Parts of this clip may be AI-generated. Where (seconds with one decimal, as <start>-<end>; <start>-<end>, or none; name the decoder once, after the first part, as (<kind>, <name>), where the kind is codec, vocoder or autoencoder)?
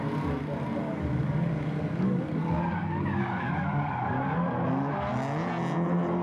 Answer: 0.8-4.5 (codec, DAC)